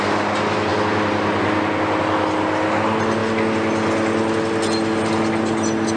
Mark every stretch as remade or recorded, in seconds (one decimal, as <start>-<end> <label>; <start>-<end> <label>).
0.0-6.0 recorded